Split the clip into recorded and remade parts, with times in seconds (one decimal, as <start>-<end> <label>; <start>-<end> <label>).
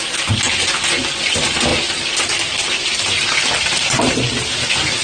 0.0-5.0 recorded